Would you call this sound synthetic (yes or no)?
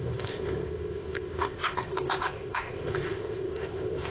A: yes